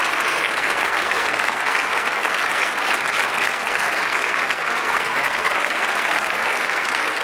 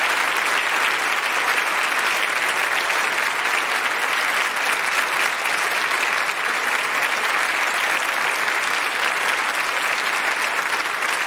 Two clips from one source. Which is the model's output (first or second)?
first